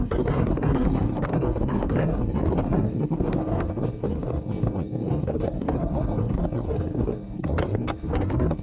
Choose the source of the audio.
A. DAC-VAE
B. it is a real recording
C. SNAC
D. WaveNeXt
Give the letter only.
C